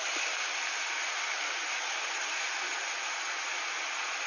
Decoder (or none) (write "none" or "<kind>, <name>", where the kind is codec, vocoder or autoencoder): none